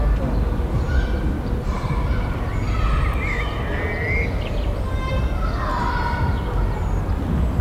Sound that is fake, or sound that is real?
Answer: real